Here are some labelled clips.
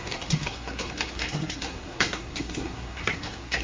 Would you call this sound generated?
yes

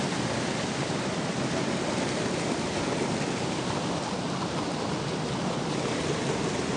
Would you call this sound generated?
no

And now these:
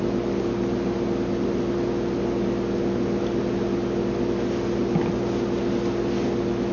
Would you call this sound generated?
no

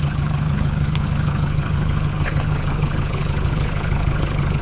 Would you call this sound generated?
yes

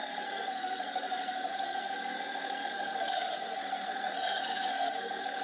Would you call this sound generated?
yes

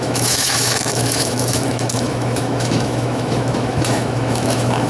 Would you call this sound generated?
yes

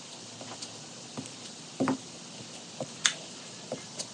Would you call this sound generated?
no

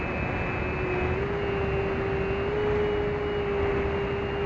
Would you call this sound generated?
no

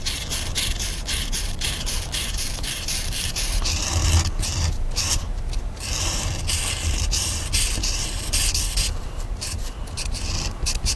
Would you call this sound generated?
yes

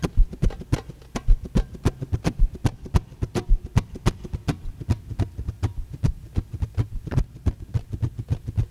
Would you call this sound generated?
no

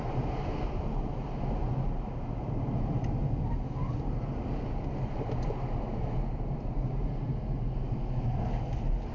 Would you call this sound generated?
no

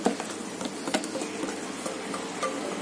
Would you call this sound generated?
no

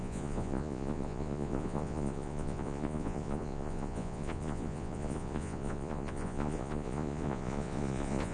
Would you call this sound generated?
yes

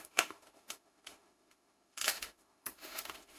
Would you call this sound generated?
yes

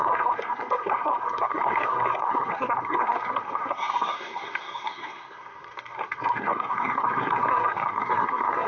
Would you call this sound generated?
yes